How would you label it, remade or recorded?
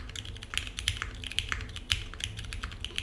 recorded